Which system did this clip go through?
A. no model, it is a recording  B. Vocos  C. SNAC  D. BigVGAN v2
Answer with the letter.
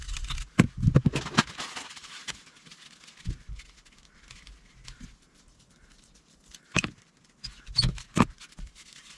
A